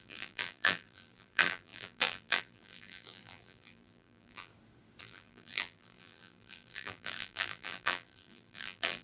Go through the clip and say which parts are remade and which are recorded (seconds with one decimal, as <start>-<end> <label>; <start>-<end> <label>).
0.0-4.5 remade; 4.5-5.0 recorded; 5.0-9.0 remade